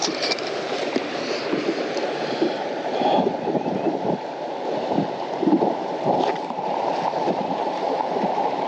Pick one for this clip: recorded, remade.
remade